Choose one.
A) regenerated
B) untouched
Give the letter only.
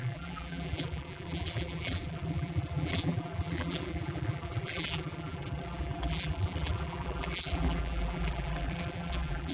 A